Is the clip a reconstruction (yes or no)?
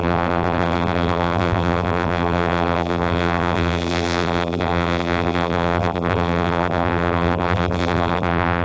yes